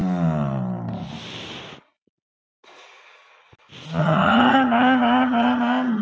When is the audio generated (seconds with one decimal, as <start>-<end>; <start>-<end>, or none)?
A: 4.0-5.6